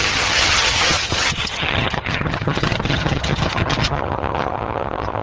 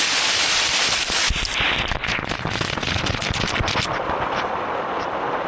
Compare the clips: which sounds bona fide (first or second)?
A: second